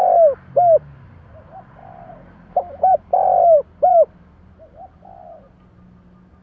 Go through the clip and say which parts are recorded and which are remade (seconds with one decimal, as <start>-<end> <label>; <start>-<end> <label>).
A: 0.0-1.8 recorded; 1.8-5.4 remade; 5.4-6.4 recorded